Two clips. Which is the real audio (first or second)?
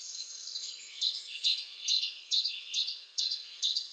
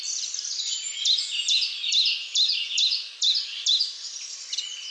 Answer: second